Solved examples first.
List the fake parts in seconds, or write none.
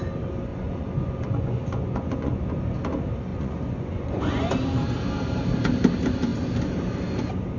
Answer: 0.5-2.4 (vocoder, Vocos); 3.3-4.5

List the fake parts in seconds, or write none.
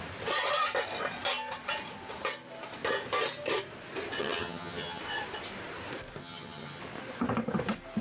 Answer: 4.2-5.0 (vocoder, HiFi-GAN); 6.2-6.8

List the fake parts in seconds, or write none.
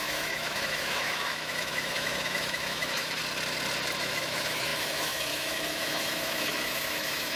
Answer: 0.0-3.2 (autoencoder, DAC-VAE); 4.0-7.4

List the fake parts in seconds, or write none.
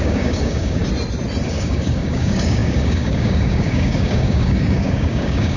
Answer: 0.0-0.8 (codec, DAC); 1.5-5.6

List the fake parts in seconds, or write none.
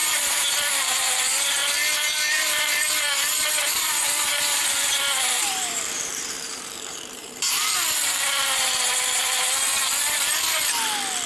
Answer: 0.0-1.6 (vocoder, BigVGAN v2); 2.3-9.7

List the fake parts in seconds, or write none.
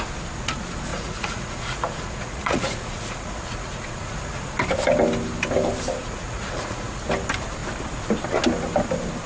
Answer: 0.9-4.4 (vocoder, Vocos); 6.0-7.0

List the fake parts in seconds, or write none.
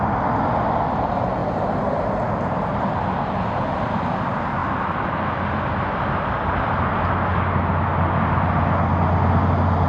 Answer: none